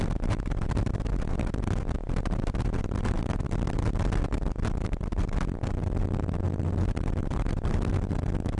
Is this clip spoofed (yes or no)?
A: no